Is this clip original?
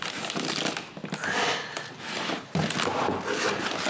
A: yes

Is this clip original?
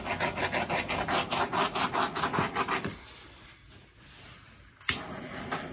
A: yes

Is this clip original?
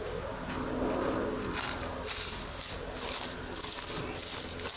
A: yes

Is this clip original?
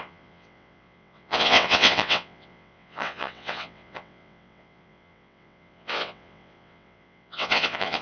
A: no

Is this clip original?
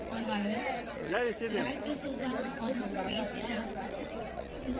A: no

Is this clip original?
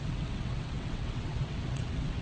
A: no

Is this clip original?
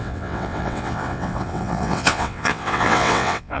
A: no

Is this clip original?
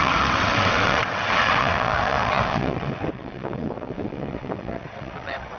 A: no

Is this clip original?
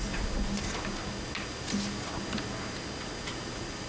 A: yes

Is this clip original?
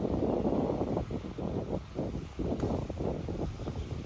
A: yes